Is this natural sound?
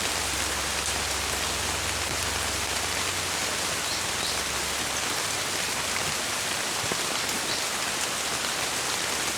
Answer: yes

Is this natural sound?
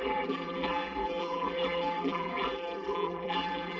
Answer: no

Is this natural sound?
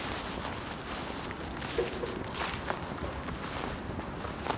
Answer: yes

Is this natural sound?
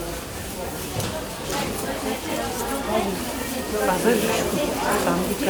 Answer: no